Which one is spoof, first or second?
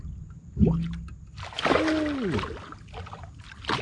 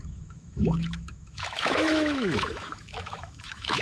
second